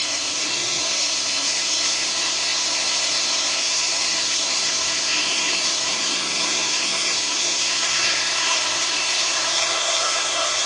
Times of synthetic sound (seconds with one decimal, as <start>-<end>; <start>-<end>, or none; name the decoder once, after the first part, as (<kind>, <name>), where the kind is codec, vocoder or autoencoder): 0.0-10.7 (codec, SNAC)